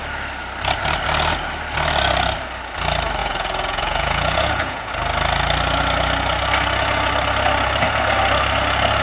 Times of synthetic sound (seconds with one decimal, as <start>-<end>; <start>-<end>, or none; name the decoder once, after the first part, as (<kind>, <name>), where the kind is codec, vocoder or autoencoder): 3.2-4.9 (vocoder, Vocos)